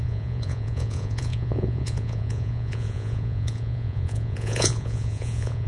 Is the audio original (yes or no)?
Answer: no